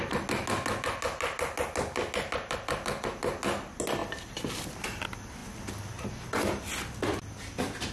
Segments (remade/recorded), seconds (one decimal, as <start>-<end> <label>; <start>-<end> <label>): 0.0-7.9 recorded